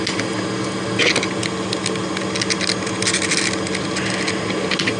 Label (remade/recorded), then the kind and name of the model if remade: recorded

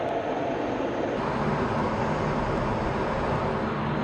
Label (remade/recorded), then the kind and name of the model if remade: recorded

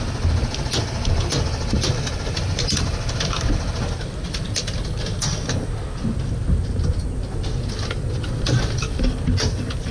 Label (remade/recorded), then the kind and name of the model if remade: recorded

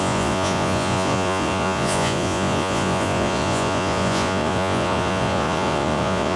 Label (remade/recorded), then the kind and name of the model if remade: remade, vocoder, Vocos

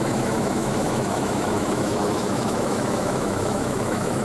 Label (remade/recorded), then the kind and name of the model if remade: remade, autoencoder, DAC-VAE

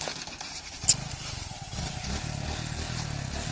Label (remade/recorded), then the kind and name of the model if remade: recorded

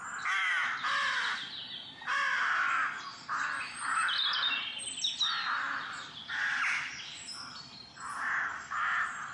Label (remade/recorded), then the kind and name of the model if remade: recorded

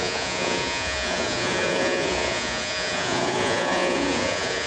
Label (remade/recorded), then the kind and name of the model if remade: remade, vocoder, Vocos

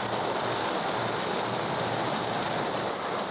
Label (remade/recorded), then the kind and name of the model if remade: recorded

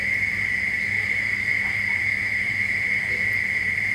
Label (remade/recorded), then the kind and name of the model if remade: recorded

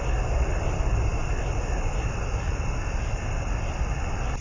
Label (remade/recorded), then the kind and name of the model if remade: recorded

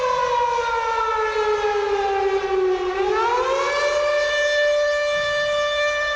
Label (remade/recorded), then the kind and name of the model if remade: recorded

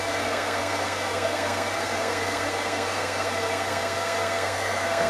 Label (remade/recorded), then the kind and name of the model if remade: remade, codec, SNAC